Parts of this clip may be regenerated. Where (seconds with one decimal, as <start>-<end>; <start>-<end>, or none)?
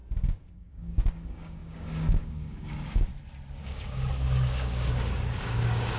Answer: 0.6-3.1; 3.6-6.0